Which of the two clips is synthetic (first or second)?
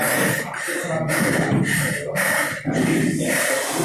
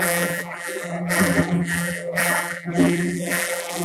second